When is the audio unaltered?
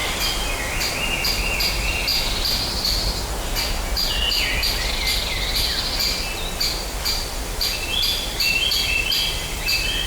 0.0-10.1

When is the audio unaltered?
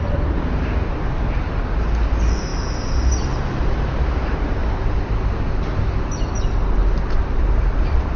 0.0-8.2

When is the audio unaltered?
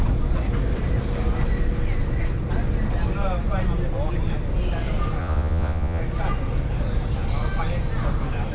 0.0-5.2; 6.0-8.5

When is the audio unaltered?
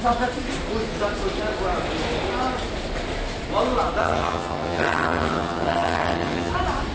0.0-4.0; 6.5-6.9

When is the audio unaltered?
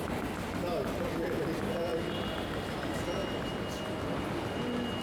0.0-5.0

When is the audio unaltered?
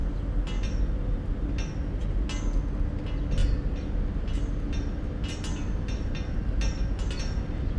0.0-7.8